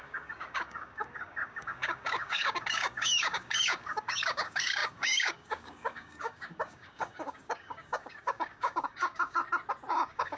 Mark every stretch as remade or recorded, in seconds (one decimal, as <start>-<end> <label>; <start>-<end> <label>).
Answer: 0.0-9.4 remade; 9.4-9.9 recorded; 9.9-10.4 remade